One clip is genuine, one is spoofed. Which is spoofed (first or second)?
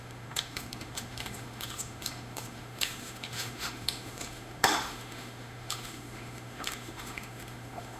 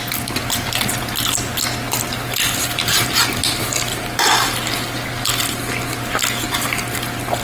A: first